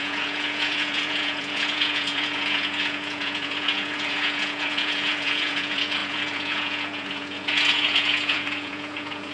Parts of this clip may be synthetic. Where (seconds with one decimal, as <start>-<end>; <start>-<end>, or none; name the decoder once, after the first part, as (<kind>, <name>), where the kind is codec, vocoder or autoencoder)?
0.0-9.3 (vocoder, Vocos)